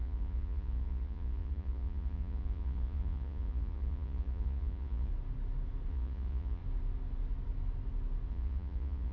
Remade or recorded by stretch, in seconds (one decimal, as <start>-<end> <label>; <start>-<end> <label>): 0.0-5.1 remade; 5.1-5.9 recorded; 5.9-6.6 remade; 6.6-8.3 recorded; 8.3-9.1 remade